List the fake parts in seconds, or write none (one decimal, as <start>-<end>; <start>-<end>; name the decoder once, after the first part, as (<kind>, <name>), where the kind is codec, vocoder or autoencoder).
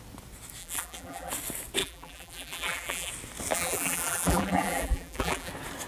0.6-1.3 (vocoder, BigVGAN v2); 1.8-3.1; 3.5-5.5